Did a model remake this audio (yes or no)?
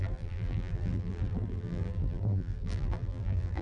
yes